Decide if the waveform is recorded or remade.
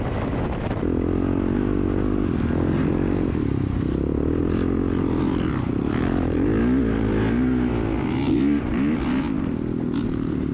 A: recorded